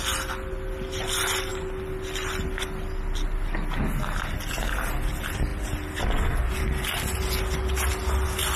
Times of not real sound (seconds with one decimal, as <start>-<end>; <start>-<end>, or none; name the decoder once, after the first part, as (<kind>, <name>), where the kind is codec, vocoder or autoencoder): none